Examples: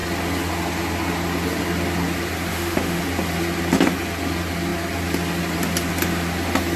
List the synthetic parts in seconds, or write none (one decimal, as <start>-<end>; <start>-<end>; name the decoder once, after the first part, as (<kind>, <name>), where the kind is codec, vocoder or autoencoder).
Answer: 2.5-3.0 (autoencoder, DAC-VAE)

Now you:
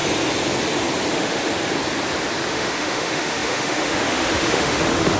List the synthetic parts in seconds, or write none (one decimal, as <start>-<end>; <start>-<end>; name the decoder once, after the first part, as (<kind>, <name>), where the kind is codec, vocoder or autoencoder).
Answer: 1.1-1.5 (autoencoder, DAC-VAE); 2.5-5.2

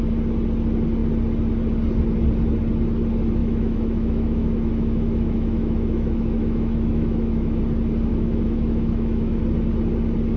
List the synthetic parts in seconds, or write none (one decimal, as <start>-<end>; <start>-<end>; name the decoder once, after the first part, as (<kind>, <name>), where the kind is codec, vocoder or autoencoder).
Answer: 3.4-7.6 (autoencoder, DAC-VAE); 8.1-9.4

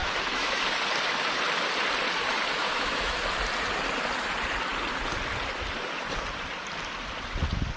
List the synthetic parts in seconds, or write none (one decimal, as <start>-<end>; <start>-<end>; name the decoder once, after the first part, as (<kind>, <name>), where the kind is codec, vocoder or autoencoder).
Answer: 0.0-0.6 (autoencoder, DAC-VAE); 2.6-3.2

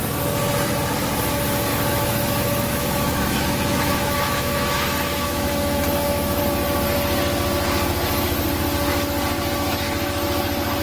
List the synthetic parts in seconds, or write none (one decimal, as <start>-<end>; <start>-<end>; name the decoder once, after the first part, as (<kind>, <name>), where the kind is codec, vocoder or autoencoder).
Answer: 1.7-6.4 (autoencoder, DAC-VAE)